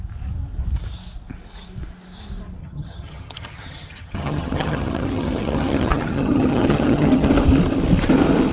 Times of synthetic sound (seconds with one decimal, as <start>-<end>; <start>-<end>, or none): 2.6-7.3